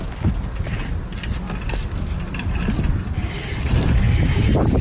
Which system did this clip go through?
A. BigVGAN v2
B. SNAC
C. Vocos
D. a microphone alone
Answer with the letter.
D